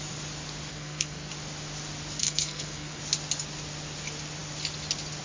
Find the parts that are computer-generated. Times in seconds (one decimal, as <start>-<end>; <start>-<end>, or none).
0.7-1.3; 2.2-3.0

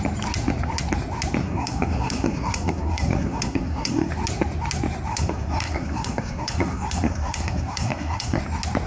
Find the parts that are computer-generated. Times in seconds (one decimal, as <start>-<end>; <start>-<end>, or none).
1.4-4.1; 5.1-8.4

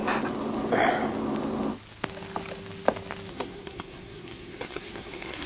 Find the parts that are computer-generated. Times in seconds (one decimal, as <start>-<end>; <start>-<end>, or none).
3.3-5.5

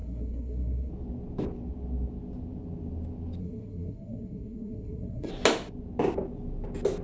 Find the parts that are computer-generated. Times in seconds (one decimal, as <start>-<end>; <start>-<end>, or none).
0.0-0.9; 3.4-5.3

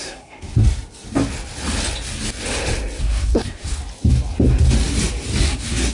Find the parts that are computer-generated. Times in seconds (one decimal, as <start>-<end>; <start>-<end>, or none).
0.0-0.5; 3.0-3.8; 5.4-5.9

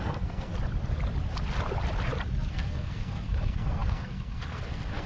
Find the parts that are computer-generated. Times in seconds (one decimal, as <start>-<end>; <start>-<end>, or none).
0.0-0.5; 2.5-5.1